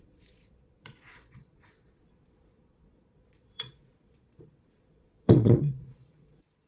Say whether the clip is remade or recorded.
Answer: remade